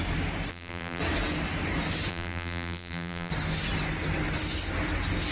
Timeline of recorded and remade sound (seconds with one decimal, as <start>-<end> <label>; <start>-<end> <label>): 0.0-0.5 recorded; 0.5-1.0 remade; 1.0-2.1 recorded; 2.1-3.3 remade; 3.3-5.3 recorded